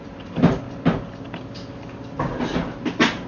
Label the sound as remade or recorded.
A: recorded